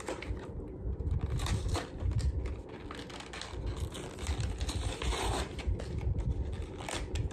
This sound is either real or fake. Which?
fake